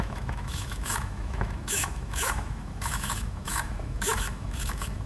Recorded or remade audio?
remade